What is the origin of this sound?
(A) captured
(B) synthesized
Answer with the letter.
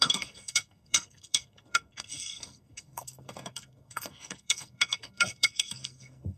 B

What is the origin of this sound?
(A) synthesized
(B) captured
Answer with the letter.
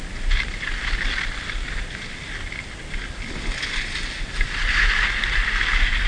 B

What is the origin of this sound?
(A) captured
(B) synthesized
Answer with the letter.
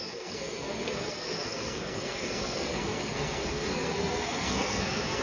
B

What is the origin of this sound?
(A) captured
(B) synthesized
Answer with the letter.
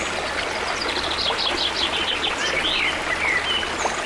A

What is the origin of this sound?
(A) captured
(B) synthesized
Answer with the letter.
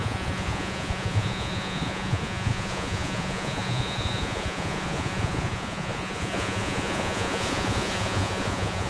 B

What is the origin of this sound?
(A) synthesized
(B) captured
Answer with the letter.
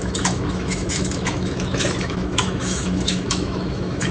A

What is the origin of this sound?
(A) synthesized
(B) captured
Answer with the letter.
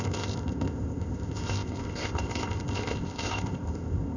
A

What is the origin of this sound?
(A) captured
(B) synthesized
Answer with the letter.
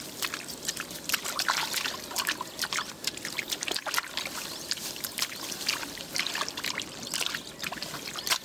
A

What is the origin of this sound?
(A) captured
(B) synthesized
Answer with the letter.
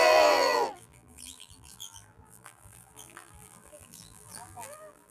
B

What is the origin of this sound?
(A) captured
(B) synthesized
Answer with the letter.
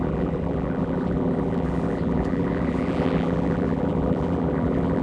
B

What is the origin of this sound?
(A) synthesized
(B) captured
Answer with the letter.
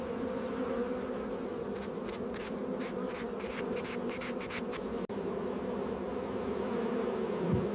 B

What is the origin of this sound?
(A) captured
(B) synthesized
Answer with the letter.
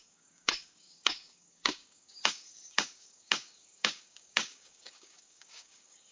B